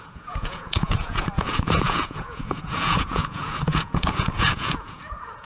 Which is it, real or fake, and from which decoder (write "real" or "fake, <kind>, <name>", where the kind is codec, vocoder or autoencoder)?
fake, vocoder, Vocos